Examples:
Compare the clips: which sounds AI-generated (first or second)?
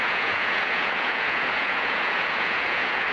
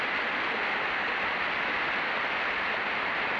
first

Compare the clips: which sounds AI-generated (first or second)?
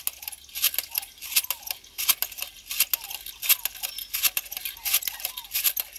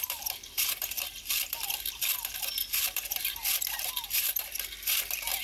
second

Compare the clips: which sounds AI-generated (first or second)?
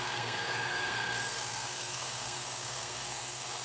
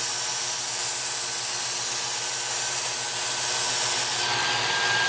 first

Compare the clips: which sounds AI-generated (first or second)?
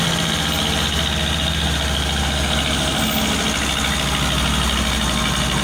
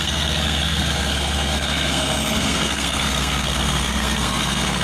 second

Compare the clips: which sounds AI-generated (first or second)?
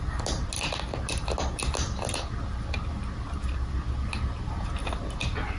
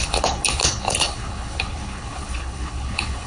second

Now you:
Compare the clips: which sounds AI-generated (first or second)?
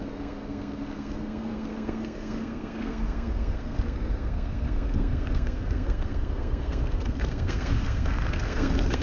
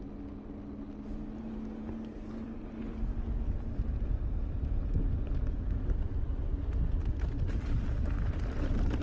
first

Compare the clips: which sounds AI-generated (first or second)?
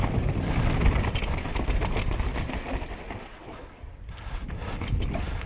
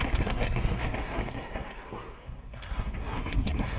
second